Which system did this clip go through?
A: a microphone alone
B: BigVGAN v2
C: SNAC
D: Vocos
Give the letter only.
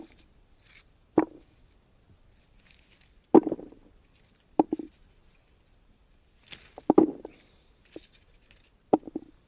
A